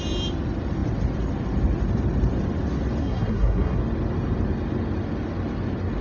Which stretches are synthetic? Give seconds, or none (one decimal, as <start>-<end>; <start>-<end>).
3.0-3.8